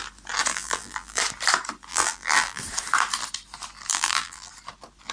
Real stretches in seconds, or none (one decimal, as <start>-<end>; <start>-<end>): 0.0-0.5; 1.2-1.9; 2.6-3.9; 4.5-5.1